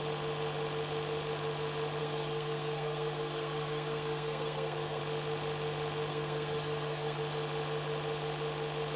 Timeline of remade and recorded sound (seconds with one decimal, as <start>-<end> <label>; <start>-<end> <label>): 0.0-2.0 recorded; 2.0-5.0 remade; 5.0-6.1 recorded; 6.1-7.2 remade; 7.2-9.0 recorded